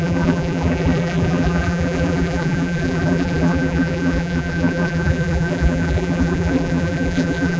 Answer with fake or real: fake